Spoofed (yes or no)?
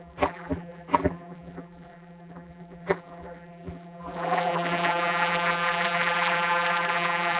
yes